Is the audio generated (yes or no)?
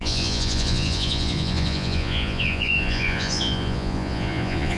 yes